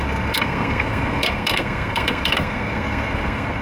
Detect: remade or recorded remade